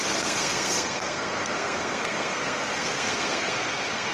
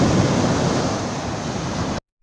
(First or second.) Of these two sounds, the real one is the second